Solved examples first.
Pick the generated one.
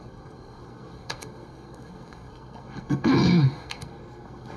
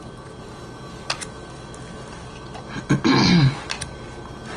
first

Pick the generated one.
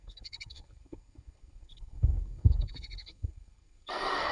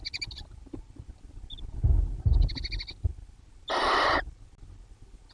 first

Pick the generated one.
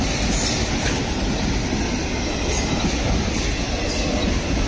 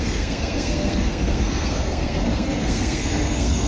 second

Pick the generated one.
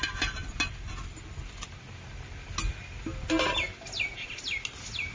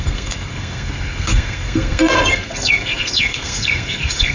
second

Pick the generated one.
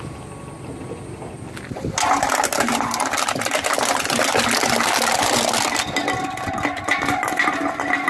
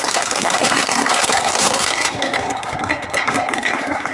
second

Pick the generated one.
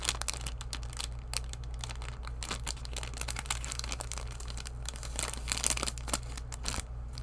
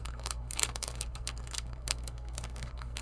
second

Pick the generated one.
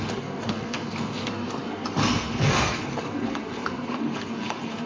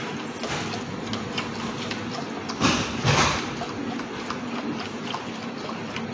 first